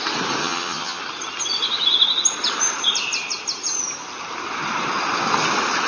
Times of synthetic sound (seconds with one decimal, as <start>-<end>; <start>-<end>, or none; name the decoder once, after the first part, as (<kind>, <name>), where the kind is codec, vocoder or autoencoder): 0.4-1.0 (vocoder, HiFi-GAN)